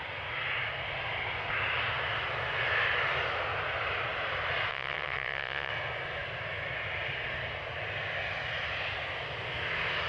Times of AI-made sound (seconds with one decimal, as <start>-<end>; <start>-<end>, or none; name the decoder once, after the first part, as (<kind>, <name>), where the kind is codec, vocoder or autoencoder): 4.7-5.7 (vocoder, WaveNeXt)